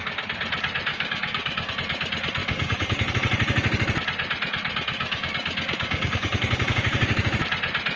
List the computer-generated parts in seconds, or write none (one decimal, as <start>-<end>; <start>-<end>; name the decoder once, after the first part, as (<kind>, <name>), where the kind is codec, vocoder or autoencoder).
0.9-1.7 (codec, DAC); 2.4-3.1; 4.9-7.4